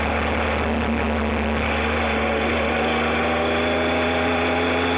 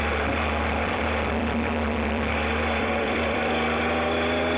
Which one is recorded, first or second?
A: first